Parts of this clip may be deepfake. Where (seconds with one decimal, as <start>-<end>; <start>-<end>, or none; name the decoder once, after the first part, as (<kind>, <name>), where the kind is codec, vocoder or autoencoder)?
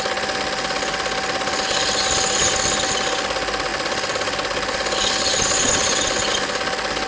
none